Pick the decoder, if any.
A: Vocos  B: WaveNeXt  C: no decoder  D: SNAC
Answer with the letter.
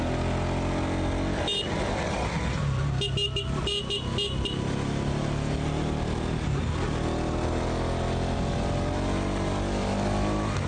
C